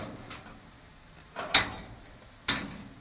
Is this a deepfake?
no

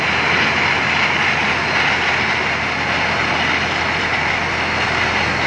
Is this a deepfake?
no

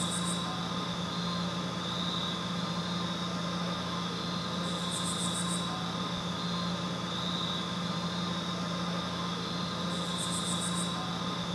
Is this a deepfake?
no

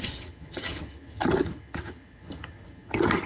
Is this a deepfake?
yes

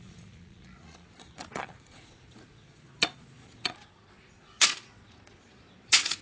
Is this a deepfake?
yes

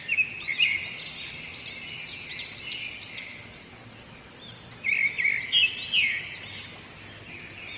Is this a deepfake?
no